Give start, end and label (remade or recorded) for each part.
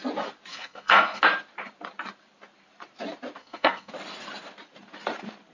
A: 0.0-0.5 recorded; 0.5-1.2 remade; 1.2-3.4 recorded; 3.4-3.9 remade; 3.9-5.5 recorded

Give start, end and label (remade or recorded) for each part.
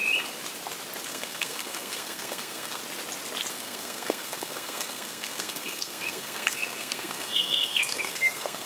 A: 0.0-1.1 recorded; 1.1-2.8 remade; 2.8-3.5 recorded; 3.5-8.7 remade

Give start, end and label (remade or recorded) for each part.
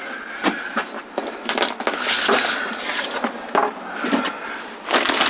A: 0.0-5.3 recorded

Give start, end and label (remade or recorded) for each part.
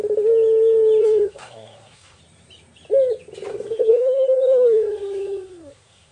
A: 0.0-1.0 recorded; 1.0-2.2 remade; 2.2-3.5 recorded; 3.5-6.1 remade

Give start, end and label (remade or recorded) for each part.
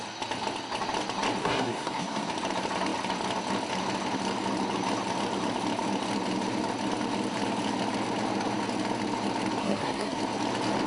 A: 0.0-1.4 recorded; 1.4-2.3 remade; 2.3-9.6 recorded; 9.6-10.2 remade; 10.2-10.9 recorded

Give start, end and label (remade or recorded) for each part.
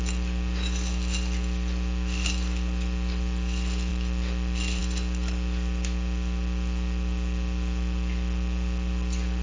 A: 0.0-9.4 recorded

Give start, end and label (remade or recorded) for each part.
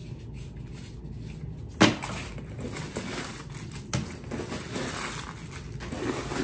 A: 0.0-6.4 recorded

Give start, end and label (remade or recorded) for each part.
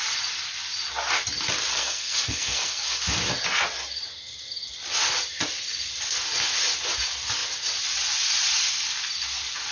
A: 0.0-1.7 recorded; 1.7-3.0 remade; 3.0-9.7 recorded